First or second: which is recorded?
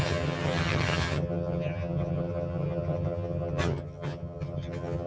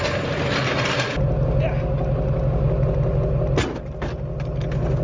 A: second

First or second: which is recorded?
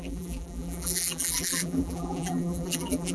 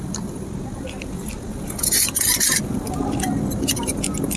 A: second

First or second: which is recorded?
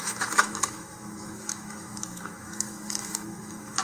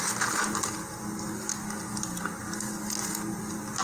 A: second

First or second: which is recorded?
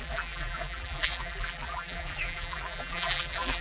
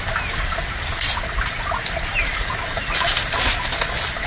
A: second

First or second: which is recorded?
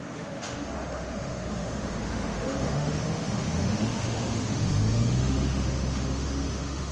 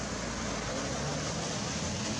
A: second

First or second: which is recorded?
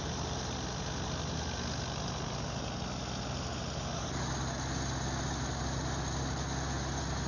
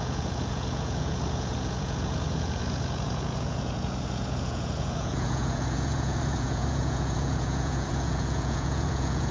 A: first